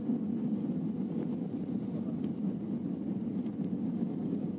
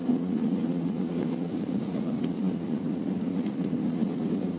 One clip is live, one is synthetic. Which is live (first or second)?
first